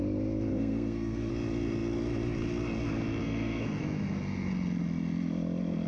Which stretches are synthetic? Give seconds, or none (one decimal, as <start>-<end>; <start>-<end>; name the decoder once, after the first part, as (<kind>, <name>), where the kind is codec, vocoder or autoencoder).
0.5-1.3 (codec, SNAC); 3.2-3.8